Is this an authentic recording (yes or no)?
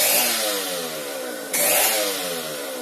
yes